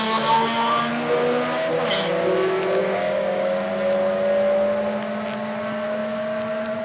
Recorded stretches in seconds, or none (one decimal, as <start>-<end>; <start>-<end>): 0.0-2.8; 3.7-6.8